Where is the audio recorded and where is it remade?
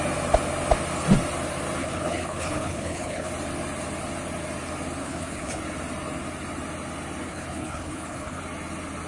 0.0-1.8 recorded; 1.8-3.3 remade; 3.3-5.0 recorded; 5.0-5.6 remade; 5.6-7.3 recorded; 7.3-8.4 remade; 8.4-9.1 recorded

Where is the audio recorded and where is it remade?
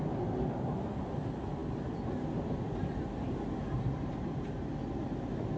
0.0-5.6 recorded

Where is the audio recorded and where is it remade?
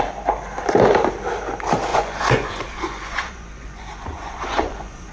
0.0-1.9 recorded; 1.9-5.1 remade